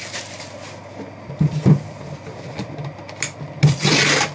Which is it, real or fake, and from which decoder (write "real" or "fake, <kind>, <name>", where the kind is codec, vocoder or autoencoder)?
real